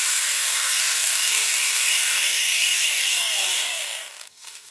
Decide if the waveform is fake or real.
fake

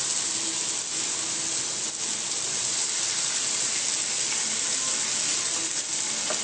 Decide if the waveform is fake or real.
real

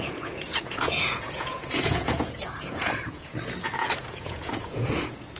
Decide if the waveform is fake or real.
fake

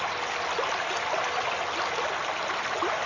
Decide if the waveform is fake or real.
real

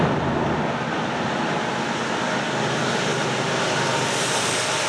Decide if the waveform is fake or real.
real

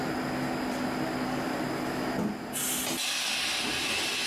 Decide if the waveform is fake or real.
real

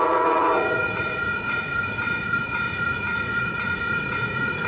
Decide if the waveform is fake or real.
fake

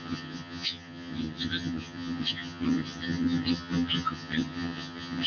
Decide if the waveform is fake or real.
fake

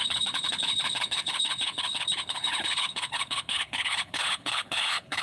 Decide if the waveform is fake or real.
fake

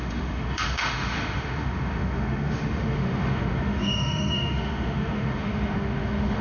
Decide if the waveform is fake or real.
fake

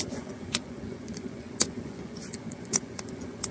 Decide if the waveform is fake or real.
fake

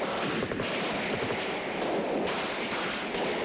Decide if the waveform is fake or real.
real